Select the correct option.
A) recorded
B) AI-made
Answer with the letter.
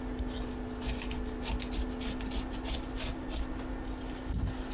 A